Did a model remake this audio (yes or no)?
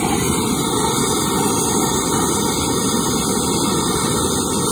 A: no